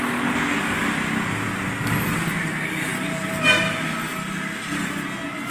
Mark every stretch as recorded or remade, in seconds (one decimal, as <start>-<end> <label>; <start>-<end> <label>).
0.0-5.5 recorded